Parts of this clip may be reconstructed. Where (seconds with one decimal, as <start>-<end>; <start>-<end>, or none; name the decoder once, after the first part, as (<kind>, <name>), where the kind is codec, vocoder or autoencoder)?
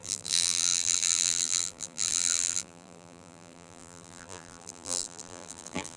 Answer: 0.0-6.0 (vocoder, BigVGAN v2)